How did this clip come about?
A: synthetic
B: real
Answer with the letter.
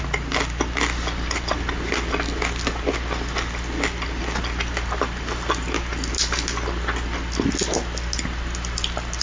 B